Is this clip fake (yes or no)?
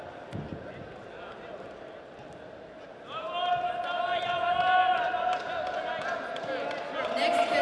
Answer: no